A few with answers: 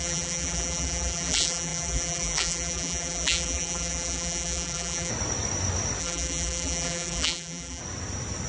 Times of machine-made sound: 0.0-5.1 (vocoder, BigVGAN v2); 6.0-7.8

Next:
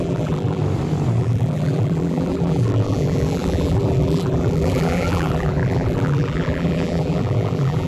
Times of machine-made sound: 0.0-0.6 (vocoder, BigVGAN v2); 1.2-7.9

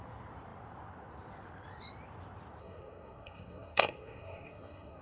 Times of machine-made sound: 2.6-5.0 (codec, SNAC)

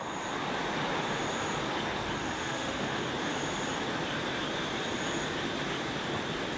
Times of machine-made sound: 2.2-3.1 (autoencoder, DAC-VAE)